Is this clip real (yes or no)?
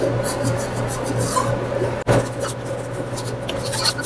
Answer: yes